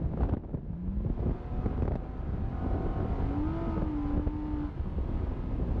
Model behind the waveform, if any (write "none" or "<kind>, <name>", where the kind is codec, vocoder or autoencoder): none